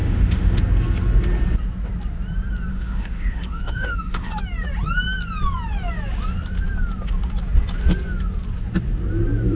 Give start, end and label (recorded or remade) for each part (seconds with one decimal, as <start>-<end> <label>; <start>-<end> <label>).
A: 0.0-0.6 remade; 0.6-2.7 recorded; 2.7-4.3 remade; 4.3-9.6 recorded